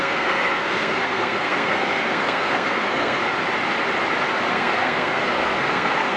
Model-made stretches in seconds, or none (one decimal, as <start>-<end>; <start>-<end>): 0.0-3.2; 4.5-6.2